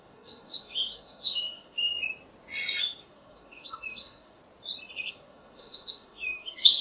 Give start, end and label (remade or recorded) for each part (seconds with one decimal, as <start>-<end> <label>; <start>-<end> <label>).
0.0-1.9 remade; 1.9-2.8 recorded; 2.8-4.4 remade; 4.4-5.1 recorded; 5.1-6.8 remade